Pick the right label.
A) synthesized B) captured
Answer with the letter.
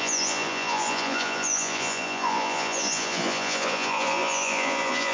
A